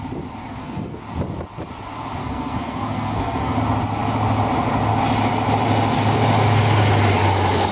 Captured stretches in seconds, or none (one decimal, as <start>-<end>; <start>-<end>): 0.0-0.4; 1.0-2.2; 3.6-7.7